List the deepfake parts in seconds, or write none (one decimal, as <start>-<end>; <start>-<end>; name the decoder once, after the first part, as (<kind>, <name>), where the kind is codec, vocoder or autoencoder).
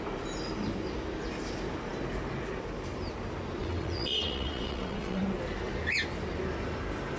3.6-5.2 (vocoder, WaveNeXt)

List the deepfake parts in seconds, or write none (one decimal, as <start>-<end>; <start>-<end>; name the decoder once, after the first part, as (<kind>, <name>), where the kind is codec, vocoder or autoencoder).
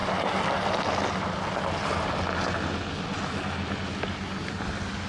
none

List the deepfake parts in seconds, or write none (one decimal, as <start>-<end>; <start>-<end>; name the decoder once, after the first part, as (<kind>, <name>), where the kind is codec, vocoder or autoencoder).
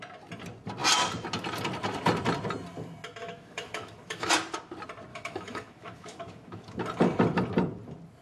3.2-4.3 (autoencoder, DAC-VAE); 5.1-6.8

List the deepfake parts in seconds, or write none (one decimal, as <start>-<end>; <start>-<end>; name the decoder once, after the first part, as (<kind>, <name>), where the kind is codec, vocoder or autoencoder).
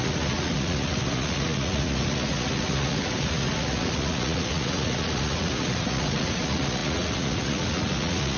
0.0-8.4 (vocoder, Vocos)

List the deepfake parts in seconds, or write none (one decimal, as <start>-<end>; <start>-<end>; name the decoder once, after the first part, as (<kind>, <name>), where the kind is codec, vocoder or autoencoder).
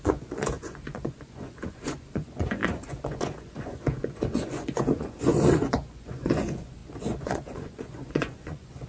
0.0-8.9 (vocoder, Vocos)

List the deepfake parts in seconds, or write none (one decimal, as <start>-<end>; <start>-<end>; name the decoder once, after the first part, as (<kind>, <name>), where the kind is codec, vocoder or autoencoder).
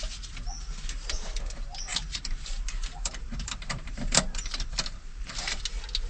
1.9-5.6 (vocoder, BigVGAN v2)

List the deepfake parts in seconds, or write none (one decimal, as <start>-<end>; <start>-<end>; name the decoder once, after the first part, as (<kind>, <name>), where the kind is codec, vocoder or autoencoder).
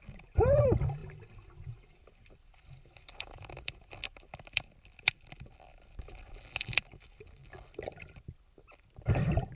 none